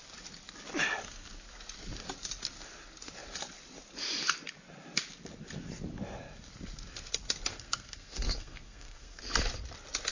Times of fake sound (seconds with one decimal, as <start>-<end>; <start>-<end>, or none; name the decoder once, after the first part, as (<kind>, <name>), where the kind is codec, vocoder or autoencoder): 7.5-9.2 (codec, SNAC)